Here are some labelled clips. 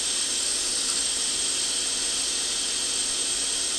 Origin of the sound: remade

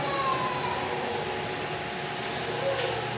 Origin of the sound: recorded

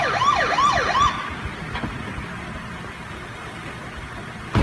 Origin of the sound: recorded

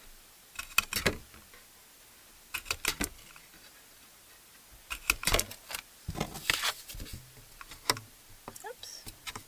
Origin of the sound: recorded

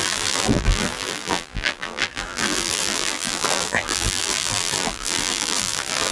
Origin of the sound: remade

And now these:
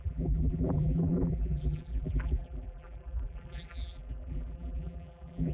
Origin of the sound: remade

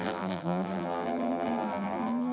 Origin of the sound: remade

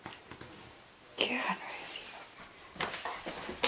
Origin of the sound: recorded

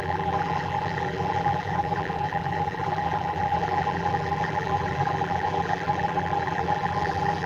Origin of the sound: remade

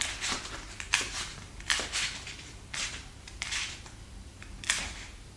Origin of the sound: remade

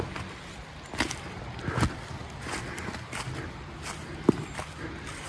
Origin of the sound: recorded